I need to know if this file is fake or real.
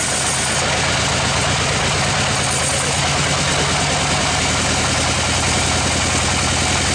real